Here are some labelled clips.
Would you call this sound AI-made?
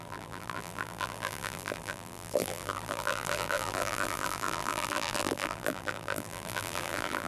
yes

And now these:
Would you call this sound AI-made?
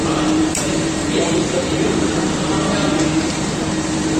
yes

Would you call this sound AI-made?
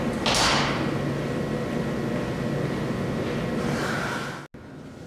no